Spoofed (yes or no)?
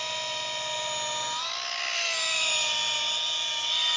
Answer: no